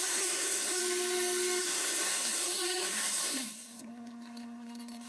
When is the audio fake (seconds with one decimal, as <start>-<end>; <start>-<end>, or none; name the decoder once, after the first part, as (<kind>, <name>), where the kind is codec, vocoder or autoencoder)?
0.0-0.8 (codec, SNAC); 1.6-5.1